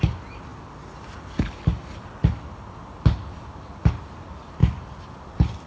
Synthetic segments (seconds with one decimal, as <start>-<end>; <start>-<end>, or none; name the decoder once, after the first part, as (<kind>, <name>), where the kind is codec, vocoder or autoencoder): none